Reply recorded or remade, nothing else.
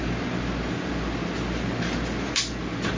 recorded